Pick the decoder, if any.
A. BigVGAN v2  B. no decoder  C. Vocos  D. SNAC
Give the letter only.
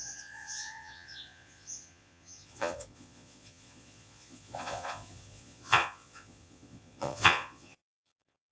C